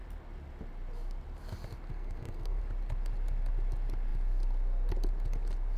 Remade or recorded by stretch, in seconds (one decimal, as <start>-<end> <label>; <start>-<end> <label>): 0.0-1.9 recorded; 1.9-2.6 remade; 2.6-5.8 recorded